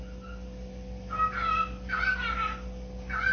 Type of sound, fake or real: real